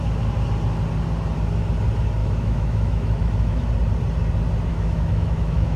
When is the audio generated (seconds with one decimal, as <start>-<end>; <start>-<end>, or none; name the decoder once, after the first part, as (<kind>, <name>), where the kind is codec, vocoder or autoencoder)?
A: 2.2-3.7 (autoencoder, DAC-VAE); 4.7-5.8